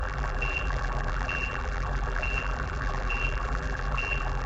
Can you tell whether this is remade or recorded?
remade